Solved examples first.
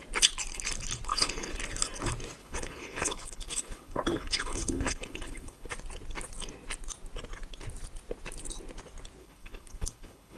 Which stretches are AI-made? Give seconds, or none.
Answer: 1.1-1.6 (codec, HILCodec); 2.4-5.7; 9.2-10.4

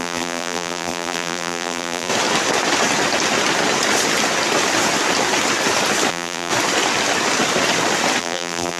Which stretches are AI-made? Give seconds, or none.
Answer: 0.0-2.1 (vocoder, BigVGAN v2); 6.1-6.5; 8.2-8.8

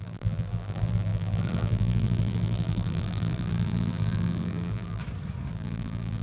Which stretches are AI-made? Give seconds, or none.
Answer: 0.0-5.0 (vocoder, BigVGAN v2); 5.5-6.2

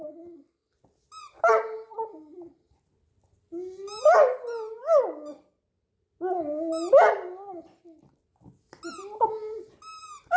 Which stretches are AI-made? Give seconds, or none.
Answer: none